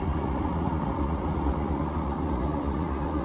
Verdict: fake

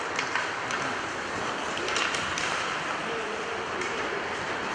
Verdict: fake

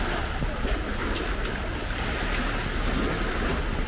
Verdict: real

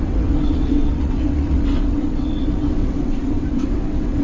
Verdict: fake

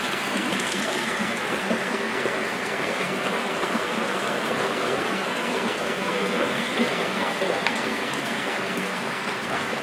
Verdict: fake